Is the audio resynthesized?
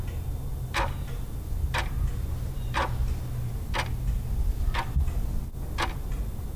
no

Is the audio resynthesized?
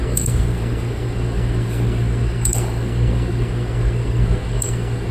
yes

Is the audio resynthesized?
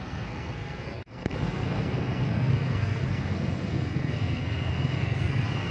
yes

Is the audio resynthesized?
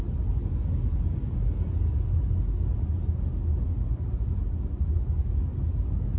no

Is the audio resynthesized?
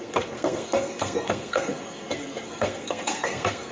yes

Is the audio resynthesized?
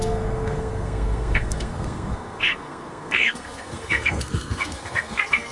yes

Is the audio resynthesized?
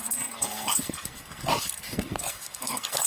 yes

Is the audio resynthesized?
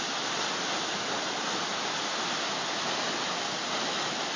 no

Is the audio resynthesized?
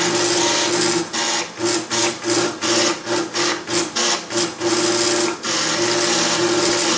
no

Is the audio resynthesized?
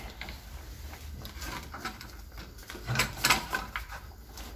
no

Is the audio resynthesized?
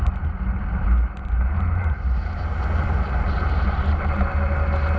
no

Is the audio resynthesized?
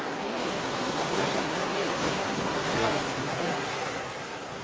yes